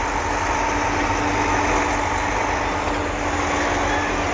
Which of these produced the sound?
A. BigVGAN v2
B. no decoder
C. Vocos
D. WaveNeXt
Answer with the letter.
B